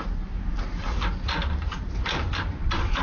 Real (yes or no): no